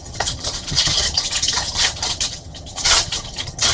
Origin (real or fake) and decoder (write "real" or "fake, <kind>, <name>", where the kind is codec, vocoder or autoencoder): fake, vocoder, HiFi-GAN